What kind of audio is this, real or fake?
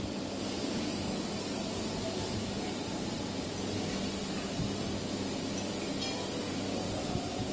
real